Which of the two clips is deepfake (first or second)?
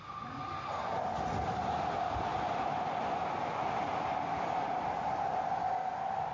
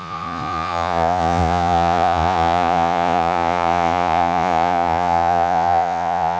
second